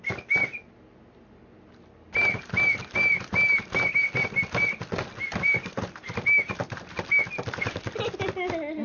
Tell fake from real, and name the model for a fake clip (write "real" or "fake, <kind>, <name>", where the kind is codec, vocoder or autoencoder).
real